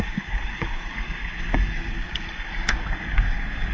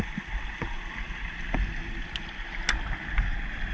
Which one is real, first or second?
second